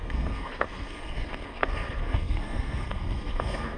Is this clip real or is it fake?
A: fake